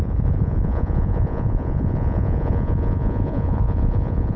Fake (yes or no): yes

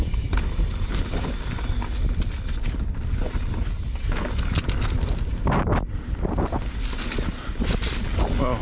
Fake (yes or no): no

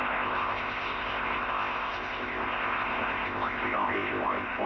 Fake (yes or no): yes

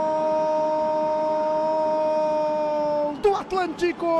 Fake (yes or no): no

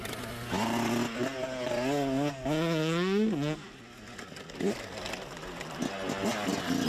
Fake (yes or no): no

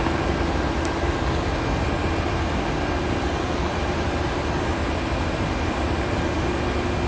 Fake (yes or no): no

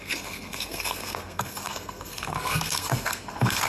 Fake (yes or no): yes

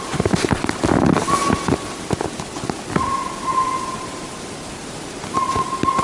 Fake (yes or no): no